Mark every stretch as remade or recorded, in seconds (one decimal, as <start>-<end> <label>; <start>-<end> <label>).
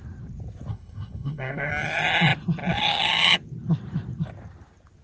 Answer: 0.0-0.7 recorded; 0.7-1.7 remade; 1.7-5.0 recorded